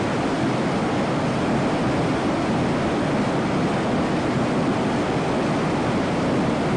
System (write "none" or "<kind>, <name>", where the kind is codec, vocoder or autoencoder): none